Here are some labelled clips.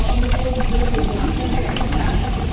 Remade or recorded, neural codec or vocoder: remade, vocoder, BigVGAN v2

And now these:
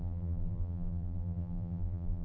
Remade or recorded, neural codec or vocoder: remade, vocoder, BigVGAN v2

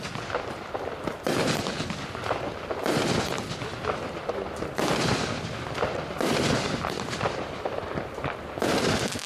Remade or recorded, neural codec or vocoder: recorded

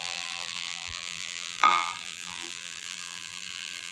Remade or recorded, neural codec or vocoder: remade, vocoder, BigVGAN v2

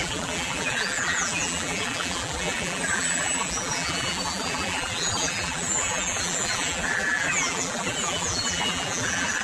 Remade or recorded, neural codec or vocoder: remade, vocoder, BigVGAN v2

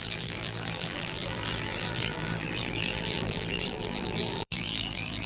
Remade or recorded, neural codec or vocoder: remade, vocoder, BigVGAN v2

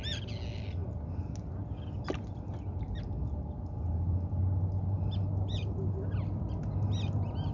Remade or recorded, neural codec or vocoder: recorded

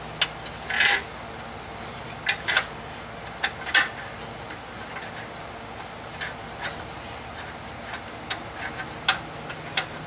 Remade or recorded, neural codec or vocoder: recorded